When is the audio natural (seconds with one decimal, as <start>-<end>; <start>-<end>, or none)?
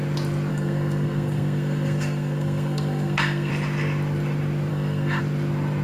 0.0-0.5; 3.5-4.7; 5.2-5.8